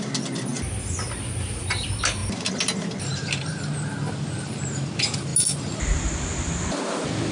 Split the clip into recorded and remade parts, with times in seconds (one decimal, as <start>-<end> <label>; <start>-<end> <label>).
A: 0.0-7.3 recorded